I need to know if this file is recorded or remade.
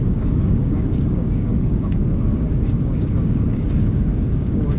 remade